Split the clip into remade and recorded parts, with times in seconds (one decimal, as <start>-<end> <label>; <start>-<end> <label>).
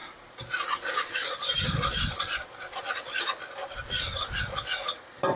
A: 0.0-3.2 remade; 3.2-5.4 recorded